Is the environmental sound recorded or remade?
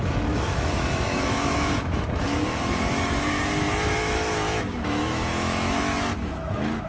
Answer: remade